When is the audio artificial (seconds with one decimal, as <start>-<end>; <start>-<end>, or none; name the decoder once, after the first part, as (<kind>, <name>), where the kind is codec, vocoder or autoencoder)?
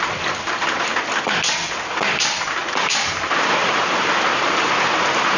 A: 0.0-5.4 (vocoder, BigVGAN v2)